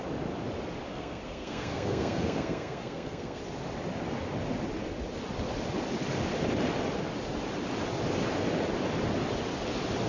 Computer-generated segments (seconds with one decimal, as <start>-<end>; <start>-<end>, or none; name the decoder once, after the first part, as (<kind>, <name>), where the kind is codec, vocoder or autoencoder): 0.9-3.4 (codec, SNAC)